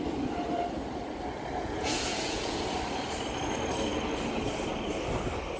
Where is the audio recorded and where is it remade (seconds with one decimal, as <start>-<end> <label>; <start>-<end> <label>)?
0.0-1.6 recorded; 1.6-2.6 remade; 2.6-5.6 recorded